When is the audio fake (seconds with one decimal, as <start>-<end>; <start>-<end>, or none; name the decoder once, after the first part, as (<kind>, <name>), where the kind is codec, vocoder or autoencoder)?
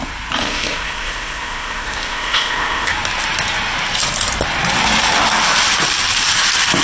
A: 0.4-2.9 (codec, ZipCodec)